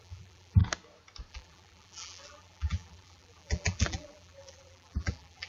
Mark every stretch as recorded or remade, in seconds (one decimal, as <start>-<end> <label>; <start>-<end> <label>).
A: 0.0-0.6 remade; 0.6-1.3 recorded; 1.3-5.5 remade